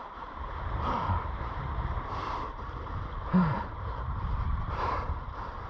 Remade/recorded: remade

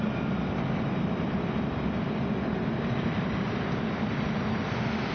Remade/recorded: recorded